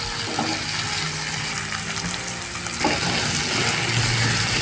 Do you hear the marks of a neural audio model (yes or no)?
no